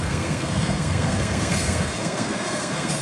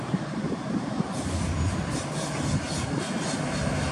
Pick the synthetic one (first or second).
first